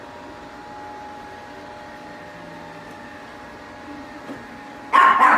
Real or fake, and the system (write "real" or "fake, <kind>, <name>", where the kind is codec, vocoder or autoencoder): real